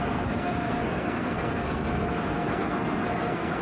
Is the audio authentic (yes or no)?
no